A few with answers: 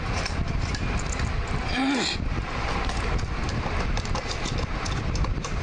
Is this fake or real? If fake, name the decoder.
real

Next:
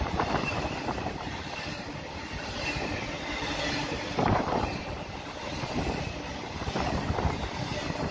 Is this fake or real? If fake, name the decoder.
fake, vocoder, BigVGAN v2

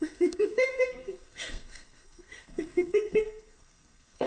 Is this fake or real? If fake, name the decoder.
fake, codec, SNAC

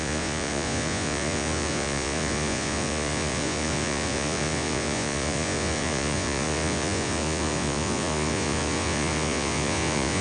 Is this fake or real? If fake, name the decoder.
fake, vocoder, Vocos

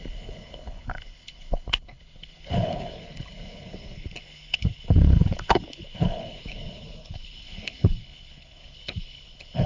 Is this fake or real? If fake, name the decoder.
fake, codec, HILCodec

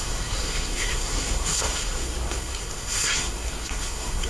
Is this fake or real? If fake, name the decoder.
fake, codec, SNAC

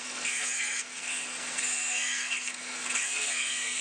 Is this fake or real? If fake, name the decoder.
fake, codec, SNAC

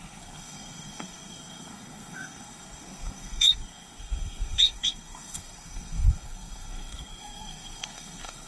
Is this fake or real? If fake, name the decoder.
fake, codec, SNAC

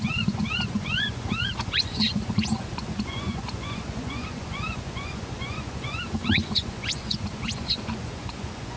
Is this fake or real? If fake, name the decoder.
fake, vocoder, Vocos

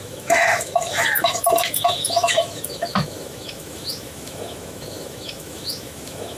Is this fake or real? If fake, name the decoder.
fake, autoencoder, DAC-VAE